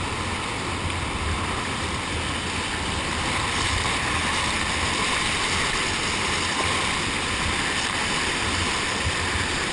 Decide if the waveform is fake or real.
real